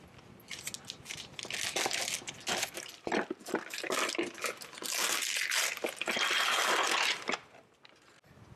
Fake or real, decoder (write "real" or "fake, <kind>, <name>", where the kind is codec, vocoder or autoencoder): real